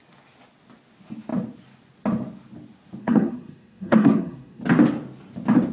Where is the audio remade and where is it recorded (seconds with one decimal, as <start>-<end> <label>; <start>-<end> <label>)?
0.0-3.0 recorded; 3.0-4.6 remade; 4.6-5.7 recorded